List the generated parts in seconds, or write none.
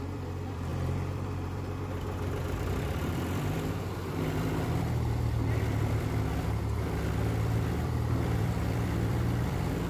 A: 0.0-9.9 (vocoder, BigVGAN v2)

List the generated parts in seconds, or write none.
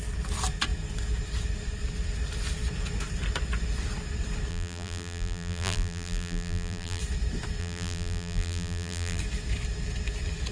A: 4.5-7.0 (vocoder, BigVGAN v2); 7.6-9.2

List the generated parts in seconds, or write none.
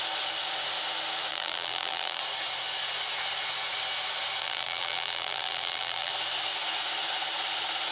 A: 1.3-2.2 (vocoder, BigVGAN v2); 4.4-6.1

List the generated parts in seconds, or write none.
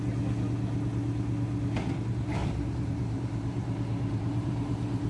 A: 2.4-5.1 (vocoder, BigVGAN v2)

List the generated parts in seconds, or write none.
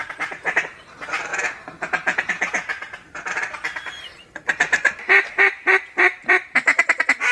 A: 0.0-1.3 (vocoder, BigVGAN v2); 2.3-7.3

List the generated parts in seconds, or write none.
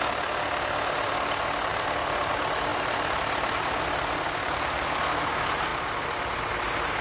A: 1.7-2.3 (vocoder, BigVGAN v2); 2.7-5.2